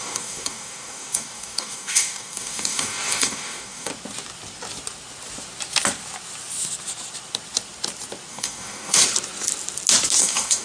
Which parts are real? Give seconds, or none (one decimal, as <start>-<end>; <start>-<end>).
3.9-8.3; 9.0-10.2